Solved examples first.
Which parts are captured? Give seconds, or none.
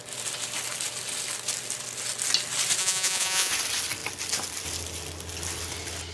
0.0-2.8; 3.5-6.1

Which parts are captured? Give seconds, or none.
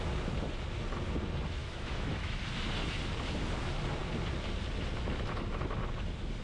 0.0-1.6; 2.4-6.4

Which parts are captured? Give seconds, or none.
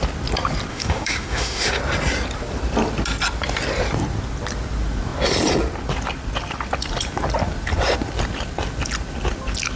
0.0-0.7; 1.8-9.8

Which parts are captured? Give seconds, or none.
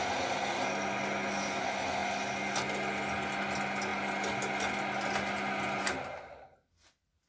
0.0-7.3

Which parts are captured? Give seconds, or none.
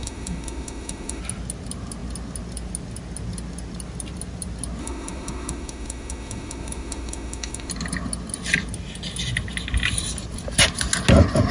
1.2-4.8; 7.7-11.5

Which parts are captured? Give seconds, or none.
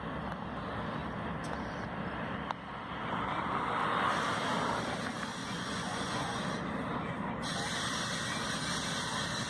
0.0-5.4; 6.4-9.5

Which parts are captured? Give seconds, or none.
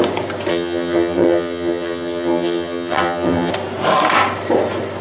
0.0-0.5; 3.5-5.0